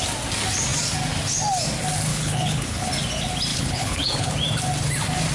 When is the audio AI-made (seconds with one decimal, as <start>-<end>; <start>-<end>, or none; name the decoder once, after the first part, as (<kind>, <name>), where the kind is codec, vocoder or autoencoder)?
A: 2.1-2.9 (codec, HILCodec); 3.5-4.3